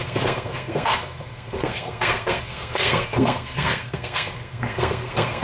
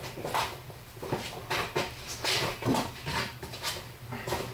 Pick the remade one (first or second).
first